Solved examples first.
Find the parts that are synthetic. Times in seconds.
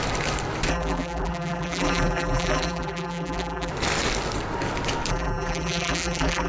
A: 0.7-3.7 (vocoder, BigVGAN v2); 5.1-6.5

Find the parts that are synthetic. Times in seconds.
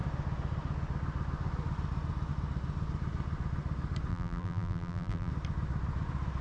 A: 4.1-5.3 (vocoder, BigVGAN v2)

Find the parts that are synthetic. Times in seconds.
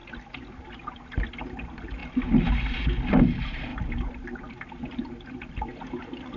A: 0.6-2.0 (vocoder, BigVGAN v2); 3.2-6.4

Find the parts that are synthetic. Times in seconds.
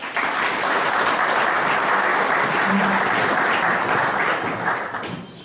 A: none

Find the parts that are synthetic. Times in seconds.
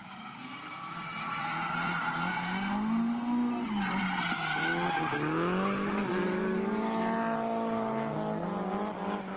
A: none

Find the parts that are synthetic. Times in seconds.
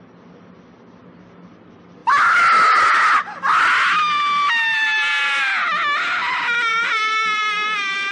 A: 6.7-8.1 (vocoder, BigVGAN v2)